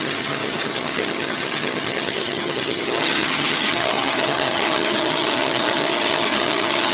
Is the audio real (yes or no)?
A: no